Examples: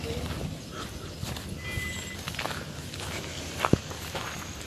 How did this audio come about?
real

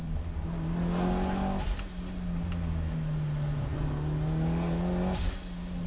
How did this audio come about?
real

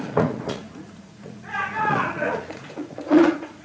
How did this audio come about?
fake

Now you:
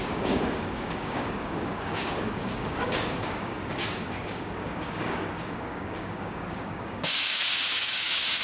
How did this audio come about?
fake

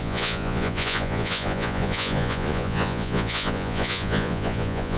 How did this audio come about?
fake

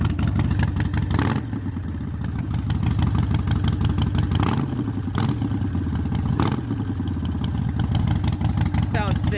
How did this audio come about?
real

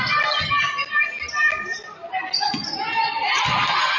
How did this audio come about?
fake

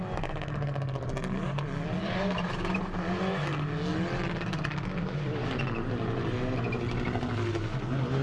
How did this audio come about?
real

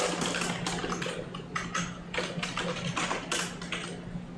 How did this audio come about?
real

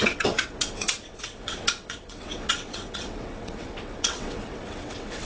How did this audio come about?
fake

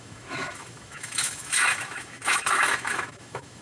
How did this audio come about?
fake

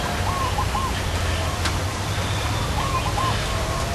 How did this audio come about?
real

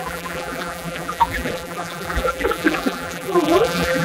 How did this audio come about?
fake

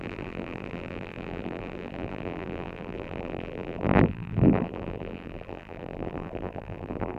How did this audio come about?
fake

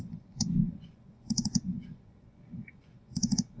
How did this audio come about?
fake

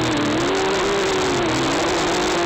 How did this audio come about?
real